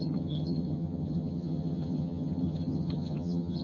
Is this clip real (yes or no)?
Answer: no